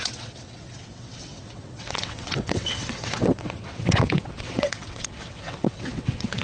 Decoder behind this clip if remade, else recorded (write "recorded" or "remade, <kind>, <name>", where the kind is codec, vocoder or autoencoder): remade, vocoder, WaveNeXt